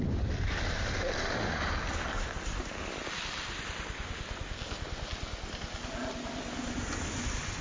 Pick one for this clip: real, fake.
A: real